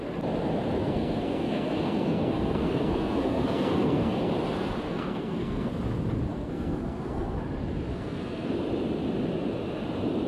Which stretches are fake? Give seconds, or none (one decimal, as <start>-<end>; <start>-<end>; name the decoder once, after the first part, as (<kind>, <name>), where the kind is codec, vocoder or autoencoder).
0.8-4.3 (codec, SNAC); 4.9-5.7; 6.3-7.4; 7.9-8.5